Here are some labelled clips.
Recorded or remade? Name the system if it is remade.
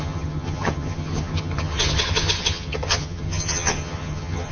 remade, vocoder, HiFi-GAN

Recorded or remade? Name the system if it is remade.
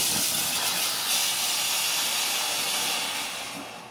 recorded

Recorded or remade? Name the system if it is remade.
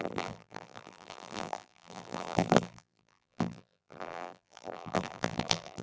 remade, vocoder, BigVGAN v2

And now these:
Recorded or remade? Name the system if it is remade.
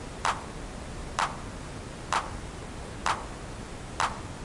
recorded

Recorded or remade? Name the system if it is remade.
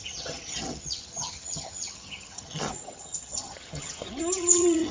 remade, vocoder, HiFi-GAN